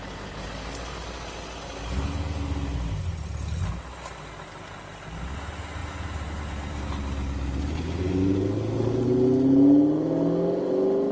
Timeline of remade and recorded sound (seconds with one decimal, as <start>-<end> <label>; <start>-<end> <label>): 0.0-5.8 recorded; 5.8-6.8 remade; 6.8-11.1 recorded